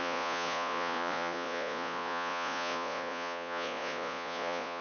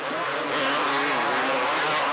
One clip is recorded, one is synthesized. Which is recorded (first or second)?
second